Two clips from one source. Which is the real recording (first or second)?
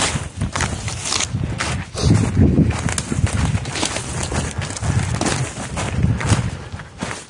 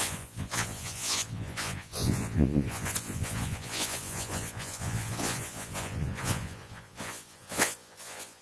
first